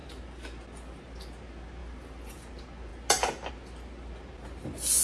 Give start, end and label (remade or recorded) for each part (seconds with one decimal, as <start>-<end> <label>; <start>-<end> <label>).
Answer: 0.0-5.0 recorded